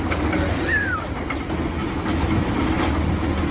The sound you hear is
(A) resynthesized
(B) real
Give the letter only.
B